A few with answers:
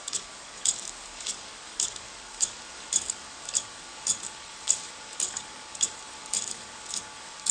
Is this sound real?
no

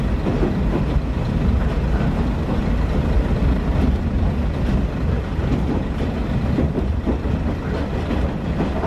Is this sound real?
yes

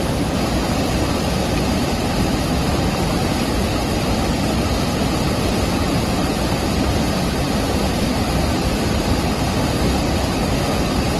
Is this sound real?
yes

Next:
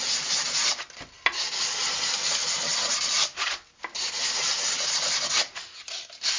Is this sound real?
yes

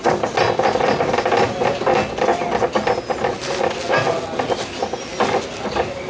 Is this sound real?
yes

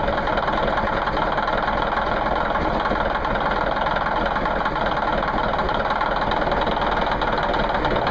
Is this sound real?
yes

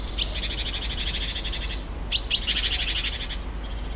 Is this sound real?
yes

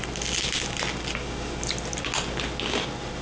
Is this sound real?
yes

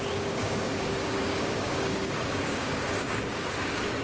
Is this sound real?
no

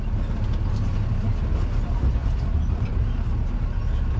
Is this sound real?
yes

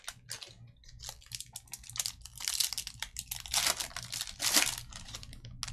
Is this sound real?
yes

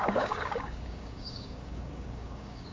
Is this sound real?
no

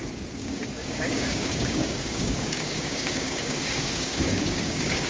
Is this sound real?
no